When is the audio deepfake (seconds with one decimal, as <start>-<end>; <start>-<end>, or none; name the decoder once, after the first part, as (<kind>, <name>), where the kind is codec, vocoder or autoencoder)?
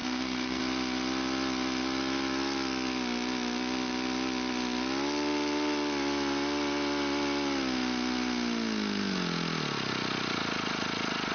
0.0-0.6 (codec, SNAC)